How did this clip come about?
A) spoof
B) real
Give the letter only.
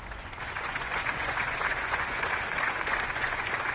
A